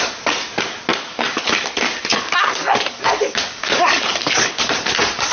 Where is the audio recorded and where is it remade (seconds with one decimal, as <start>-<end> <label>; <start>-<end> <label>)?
0.0-0.9 recorded; 0.9-1.7 remade; 1.7-2.1 recorded; 2.1-4.7 remade; 4.7-5.3 recorded